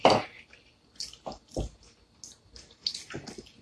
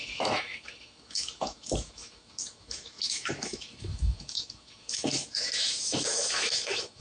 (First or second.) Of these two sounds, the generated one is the second